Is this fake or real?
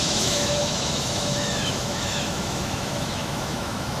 fake